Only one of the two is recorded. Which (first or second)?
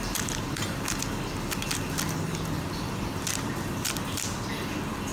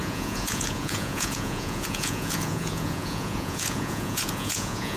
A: first